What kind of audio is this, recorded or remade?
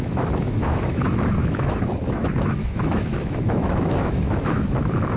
remade